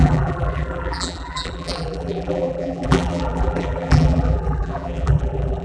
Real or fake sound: fake